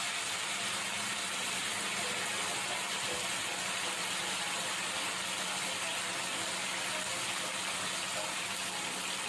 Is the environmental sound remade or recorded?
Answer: recorded